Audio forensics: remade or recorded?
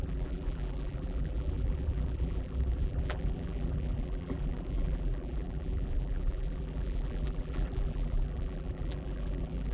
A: remade